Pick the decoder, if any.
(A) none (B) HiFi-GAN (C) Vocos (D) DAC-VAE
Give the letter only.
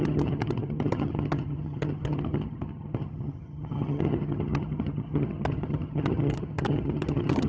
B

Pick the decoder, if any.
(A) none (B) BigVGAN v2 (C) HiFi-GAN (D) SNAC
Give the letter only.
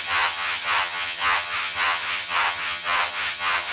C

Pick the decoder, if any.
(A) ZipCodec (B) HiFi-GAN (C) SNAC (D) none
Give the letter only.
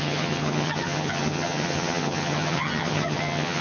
B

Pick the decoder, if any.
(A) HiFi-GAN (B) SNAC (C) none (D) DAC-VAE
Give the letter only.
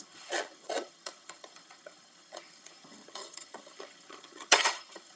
A